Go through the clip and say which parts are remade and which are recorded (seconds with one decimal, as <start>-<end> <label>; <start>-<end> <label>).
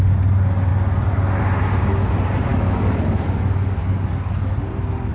0.0-2.5 recorded; 2.5-3.2 remade; 3.2-3.8 recorded; 3.8-5.1 remade